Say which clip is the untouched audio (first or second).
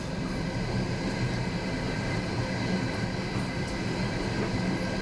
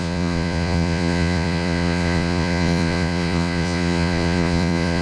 first